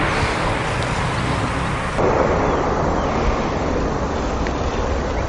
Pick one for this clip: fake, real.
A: real